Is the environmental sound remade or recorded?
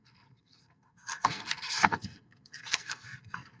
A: remade